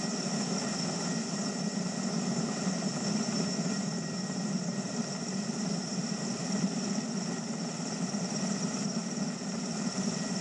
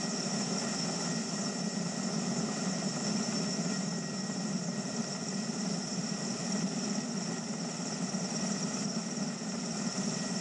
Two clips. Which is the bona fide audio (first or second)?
second